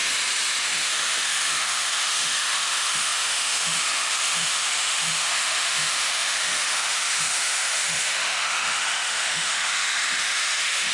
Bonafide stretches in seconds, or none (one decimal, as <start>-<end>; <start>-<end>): 0.0-0.6